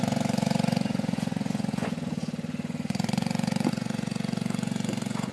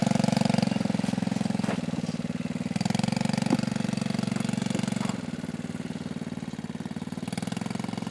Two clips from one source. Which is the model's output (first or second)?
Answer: first